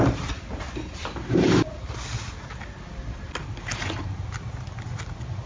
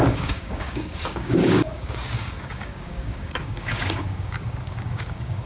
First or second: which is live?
first